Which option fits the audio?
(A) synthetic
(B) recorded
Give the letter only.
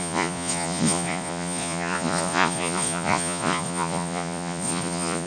A